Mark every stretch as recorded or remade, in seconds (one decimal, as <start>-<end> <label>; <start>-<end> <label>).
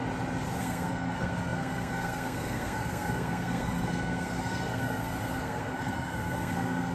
0.0-0.6 recorded; 0.6-6.9 remade